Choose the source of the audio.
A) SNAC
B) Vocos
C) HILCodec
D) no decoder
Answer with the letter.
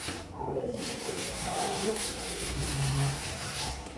A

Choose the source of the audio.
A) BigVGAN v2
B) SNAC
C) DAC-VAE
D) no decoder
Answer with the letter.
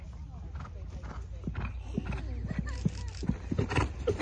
D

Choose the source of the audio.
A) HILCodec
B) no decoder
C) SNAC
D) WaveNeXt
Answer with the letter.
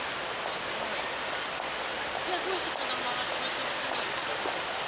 B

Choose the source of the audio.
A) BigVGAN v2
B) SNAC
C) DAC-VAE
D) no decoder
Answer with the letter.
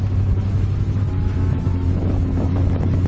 C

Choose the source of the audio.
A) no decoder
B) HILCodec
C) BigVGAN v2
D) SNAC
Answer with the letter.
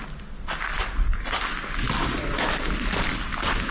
A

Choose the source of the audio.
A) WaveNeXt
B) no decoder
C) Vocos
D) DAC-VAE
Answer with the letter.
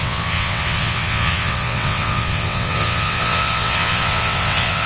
A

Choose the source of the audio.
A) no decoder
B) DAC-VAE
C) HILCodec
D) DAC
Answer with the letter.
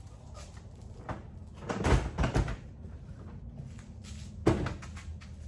A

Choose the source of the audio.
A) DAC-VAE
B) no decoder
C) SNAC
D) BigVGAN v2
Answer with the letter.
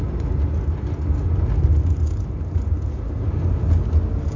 B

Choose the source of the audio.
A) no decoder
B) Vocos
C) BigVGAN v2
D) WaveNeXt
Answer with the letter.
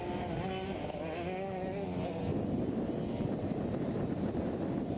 A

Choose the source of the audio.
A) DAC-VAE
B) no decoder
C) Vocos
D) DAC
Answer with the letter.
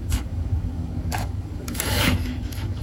D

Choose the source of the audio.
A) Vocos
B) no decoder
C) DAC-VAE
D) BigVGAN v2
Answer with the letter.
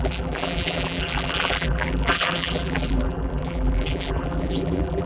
D